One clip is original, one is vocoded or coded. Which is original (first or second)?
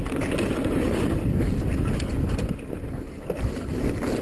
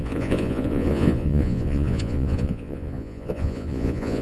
first